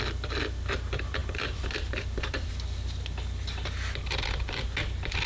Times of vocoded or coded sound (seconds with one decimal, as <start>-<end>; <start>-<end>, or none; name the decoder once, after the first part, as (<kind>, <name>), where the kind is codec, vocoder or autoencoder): 1.2-2.5 (vocoder, BigVGAN v2)